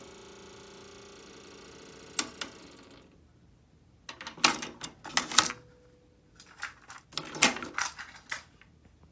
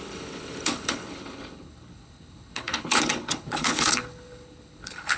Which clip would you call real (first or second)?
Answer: first